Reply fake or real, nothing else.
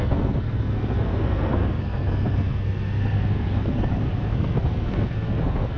fake